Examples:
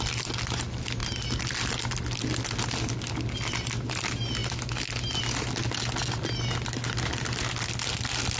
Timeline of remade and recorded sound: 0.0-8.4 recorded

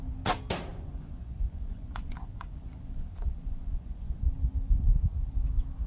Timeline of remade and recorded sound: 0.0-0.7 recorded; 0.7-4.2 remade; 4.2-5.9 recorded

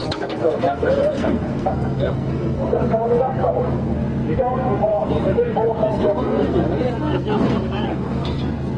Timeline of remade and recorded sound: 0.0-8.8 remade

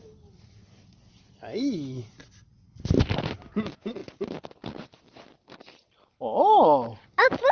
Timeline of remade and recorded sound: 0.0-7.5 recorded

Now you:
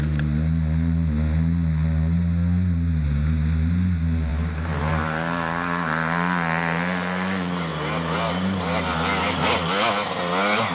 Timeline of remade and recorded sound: 0.0-10.7 recorded

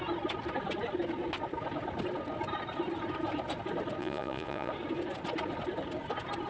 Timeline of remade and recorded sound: 0.0-4.0 recorded; 4.0-4.7 remade; 4.7-6.5 recorded

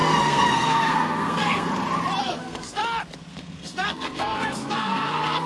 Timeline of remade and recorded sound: 0.0-1.7 remade; 1.7-2.2 recorded; 2.2-2.8 remade; 2.8-3.3 recorded; 3.3-5.5 remade

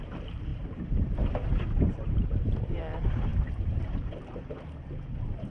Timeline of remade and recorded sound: 0.0-5.5 remade